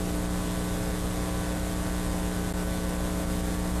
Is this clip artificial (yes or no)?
no